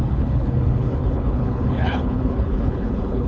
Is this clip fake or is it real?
fake